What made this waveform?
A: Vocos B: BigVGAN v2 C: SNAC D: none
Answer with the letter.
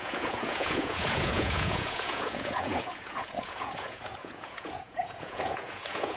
A